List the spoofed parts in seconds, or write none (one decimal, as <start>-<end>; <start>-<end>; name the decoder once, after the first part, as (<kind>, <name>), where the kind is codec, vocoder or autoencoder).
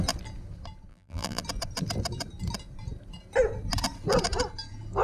0.9-1.4 (vocoder, BigVGAN v2)